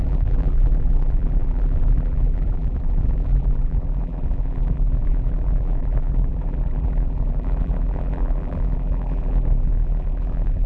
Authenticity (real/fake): fake